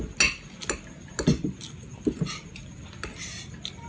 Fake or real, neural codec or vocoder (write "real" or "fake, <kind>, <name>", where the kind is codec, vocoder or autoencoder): real